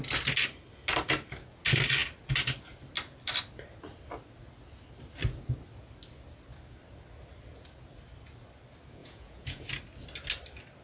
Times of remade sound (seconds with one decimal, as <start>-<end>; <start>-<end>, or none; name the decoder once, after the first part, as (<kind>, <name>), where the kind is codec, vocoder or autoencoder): 9.0-9.7 (vocoder, Vocos)